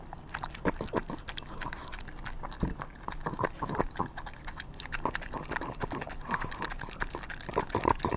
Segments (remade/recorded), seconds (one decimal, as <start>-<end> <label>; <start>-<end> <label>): 0.0-8.2 recorded